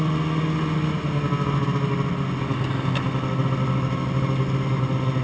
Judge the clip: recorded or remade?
recorded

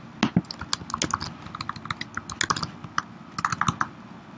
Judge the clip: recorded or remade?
recorded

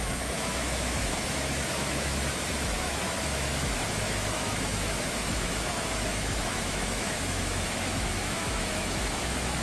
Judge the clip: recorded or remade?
remade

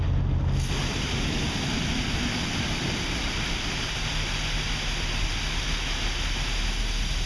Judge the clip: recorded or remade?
recorded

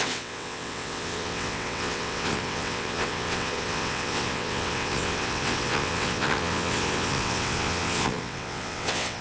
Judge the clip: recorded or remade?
remade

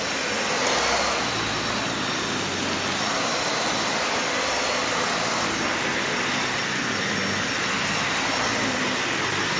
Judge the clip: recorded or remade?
recorded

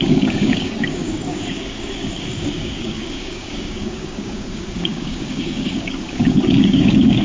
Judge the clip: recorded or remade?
remade